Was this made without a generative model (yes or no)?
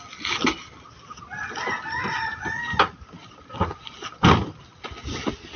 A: yes